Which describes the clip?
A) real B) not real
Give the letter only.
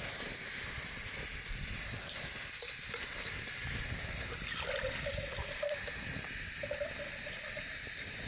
A